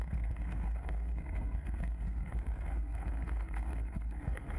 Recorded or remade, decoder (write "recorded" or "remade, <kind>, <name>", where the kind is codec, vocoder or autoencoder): remade, codec, SNAC